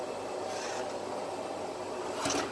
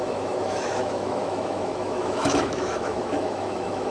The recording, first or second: first